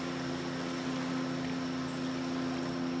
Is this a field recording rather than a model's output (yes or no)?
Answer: yes